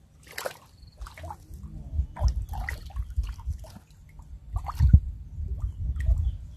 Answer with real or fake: real